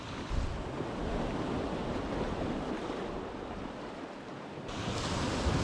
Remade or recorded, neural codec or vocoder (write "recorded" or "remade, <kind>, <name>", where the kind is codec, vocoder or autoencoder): recorded